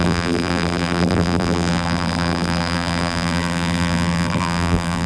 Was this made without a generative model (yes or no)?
no